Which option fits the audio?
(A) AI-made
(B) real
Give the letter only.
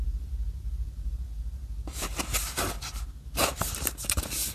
A